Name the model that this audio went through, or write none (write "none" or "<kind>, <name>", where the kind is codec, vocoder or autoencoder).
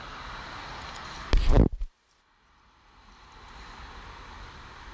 none